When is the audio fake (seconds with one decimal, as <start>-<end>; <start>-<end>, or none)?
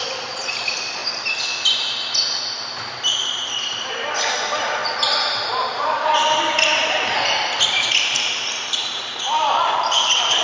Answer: 0.0-1.0; 2.6-4.8; 5.5-10.4